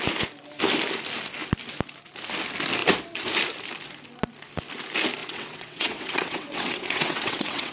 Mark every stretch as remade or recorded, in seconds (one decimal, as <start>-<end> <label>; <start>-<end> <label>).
0.0-5.2 recorded; 5.2-7.7 remade